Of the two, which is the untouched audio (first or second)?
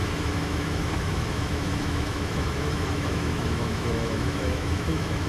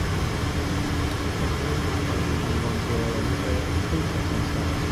second